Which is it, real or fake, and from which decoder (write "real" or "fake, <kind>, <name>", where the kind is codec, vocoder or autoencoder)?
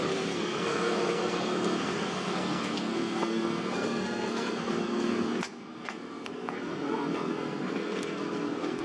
fake, codec, SNAC